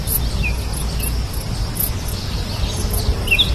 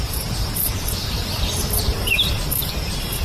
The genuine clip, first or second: first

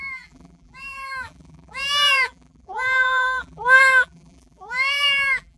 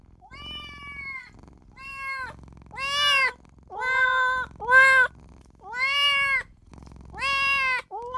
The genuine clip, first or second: second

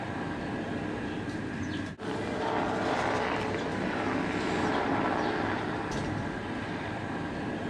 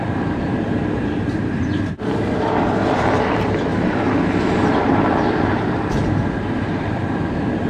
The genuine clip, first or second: first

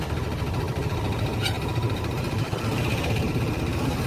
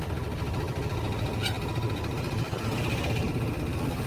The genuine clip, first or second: second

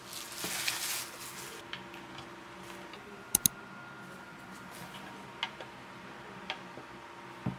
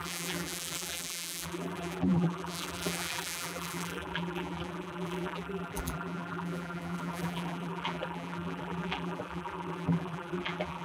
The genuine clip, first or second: first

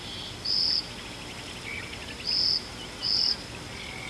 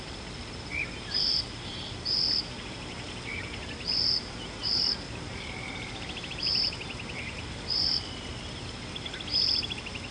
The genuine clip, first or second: first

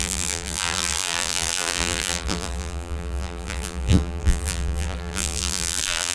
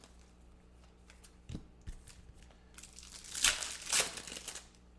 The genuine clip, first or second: second